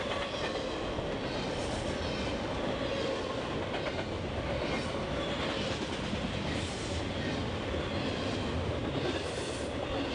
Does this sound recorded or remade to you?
recorded